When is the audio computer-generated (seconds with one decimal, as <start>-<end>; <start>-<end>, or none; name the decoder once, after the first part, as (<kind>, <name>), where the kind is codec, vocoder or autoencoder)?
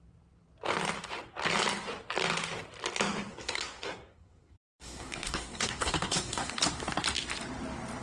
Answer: 3.3-6.6 (codec, SNAC)